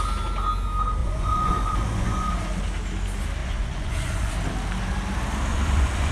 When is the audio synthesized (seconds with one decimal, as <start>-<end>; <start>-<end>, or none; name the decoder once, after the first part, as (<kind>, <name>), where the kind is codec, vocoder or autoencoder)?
1.0-2.3 (vocoder, Vocos); 3.4-4.3; 5.5-6.1